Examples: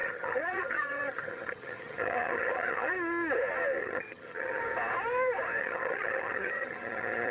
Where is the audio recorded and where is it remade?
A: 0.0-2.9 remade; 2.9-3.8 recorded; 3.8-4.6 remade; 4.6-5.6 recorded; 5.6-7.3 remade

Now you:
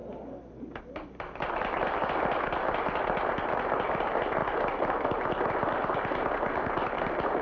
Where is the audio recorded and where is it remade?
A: 0.0-7.4 recorded

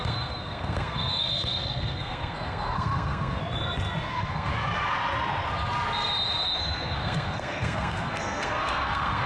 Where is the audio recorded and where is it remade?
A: 0.0-3.4 remade; 3.4-4.1 recorded; 4.1-4.5 remade; 4.5-6.6 recorded; 6.6-9.3 remade

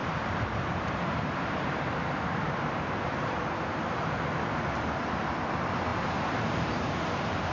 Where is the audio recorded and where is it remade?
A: 0.0-4.4 remade; 4.4-5.9 recorded; 5.9-7.5 remade

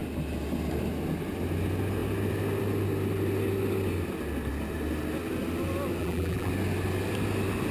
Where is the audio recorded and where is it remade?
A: 0.0-6.0 recorded; 6.0-6.5 remade; 6.5-7.7 recorded

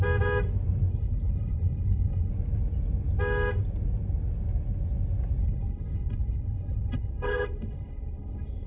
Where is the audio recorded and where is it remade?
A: 0.0-0.9 recorded; 0.9-2.3 remade; 2.3-5.4 recorded; 5.4-8.7 remade